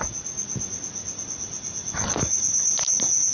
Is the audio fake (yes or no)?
no